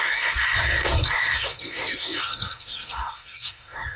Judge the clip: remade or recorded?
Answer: remade